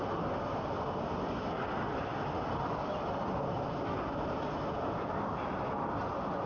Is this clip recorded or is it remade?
recorded